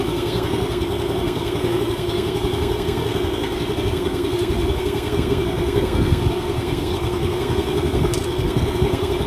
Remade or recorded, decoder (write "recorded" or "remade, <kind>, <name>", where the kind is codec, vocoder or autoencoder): remade, codec, SNAC